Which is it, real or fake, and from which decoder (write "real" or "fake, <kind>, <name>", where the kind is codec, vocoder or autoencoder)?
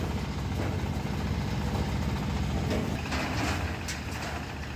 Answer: real